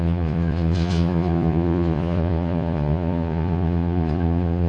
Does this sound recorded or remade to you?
remade